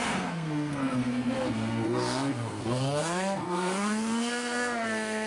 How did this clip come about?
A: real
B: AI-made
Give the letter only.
B